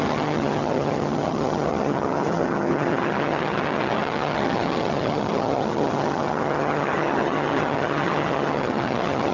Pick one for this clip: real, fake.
fake